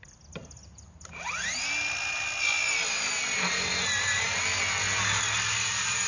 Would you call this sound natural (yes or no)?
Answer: yes